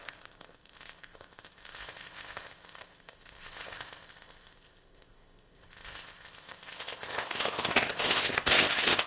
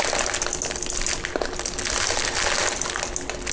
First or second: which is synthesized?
first